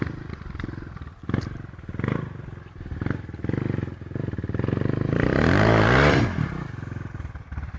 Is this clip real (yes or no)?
yes